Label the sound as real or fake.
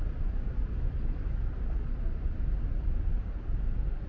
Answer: real